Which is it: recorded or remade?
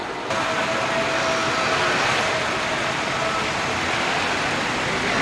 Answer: recorded